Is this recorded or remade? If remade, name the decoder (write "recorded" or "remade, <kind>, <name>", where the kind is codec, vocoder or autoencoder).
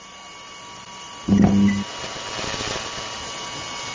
recorded